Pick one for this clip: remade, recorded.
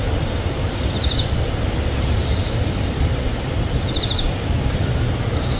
recorded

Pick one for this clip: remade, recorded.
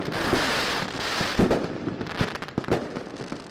recorded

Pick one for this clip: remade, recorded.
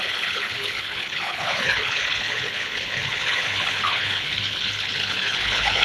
remade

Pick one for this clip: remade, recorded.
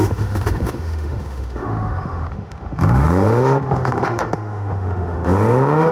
remade